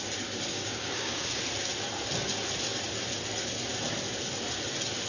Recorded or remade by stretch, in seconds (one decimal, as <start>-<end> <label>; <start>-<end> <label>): 0.0-0.5 recorded; 0.5-1.4 remade; 1.4-5.1 recorded